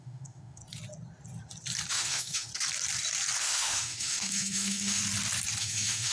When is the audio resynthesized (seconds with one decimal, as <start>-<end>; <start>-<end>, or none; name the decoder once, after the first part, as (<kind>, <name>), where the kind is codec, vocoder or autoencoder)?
0.0-0.6 (autoencoder, DAC-VAE); 1.9-2.5; 3.4-5.0; 5.6-6.1